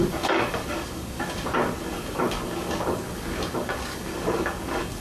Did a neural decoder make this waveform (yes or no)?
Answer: yes